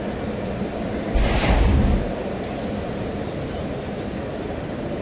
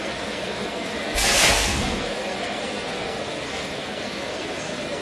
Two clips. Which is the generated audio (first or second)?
second